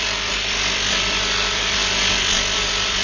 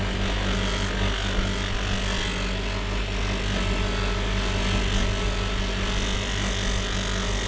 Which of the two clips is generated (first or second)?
first